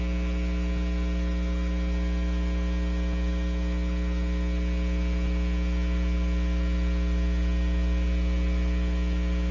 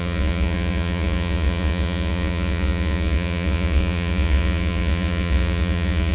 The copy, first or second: second